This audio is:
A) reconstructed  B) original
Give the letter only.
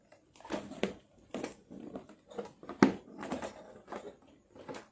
B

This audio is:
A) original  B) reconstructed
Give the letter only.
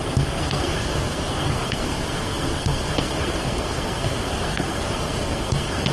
B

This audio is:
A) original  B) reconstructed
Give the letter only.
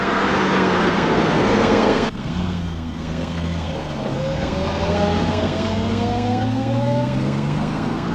B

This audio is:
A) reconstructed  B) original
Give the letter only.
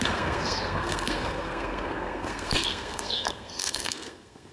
A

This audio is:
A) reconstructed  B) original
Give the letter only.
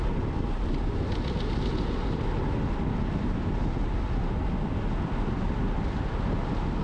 B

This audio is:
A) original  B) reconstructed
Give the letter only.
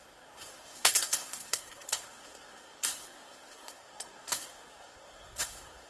B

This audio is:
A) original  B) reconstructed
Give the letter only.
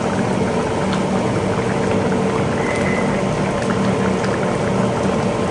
A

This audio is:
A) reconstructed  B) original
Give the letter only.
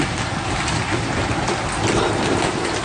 B